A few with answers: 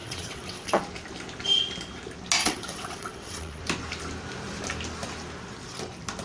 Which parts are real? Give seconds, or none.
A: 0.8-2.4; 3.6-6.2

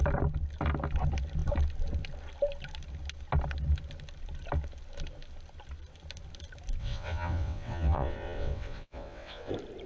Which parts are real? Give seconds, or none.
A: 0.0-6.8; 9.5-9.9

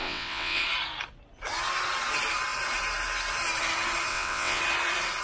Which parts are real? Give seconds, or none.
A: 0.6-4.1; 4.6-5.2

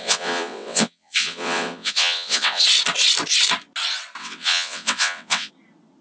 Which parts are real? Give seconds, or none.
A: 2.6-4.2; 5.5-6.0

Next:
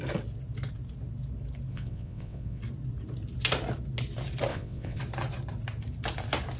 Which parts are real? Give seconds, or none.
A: 0.0-1.7; 2.6-4.5; 5.0-6.6